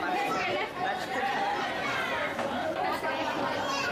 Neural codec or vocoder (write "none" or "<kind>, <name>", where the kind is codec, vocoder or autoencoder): vocoder, BigVGAN v2